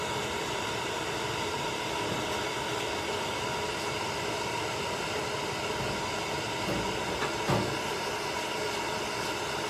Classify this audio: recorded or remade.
recorded